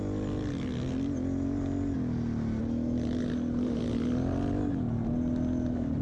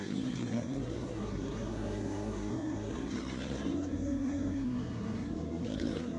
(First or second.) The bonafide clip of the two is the first